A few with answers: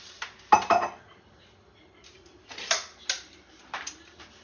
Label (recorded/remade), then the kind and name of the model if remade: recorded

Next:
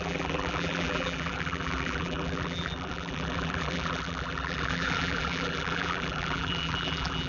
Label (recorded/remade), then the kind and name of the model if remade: remade, vocoder, BigVGAN v2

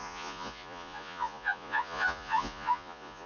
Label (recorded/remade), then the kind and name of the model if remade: remade, vocoder, Vocos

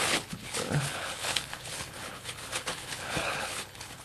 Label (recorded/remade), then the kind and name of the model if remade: remade, codec, HILCodec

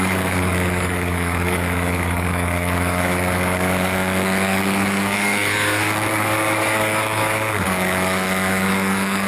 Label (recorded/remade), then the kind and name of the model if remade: remade, codec, DAC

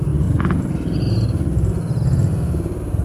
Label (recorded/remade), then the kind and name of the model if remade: recorded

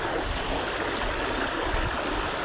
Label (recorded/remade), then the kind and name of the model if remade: recorded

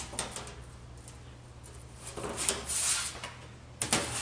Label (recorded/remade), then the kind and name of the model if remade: recorded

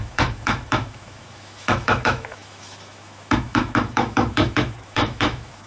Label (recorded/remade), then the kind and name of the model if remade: remade, autoencoder, DAC-VAE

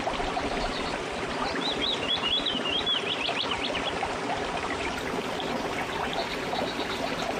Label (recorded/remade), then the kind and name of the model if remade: recorded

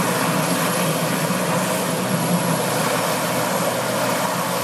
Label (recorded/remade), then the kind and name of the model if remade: recorded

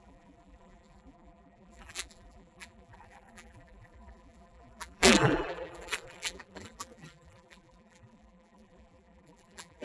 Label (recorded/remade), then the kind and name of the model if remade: remade, vocoder, BigVGAN v2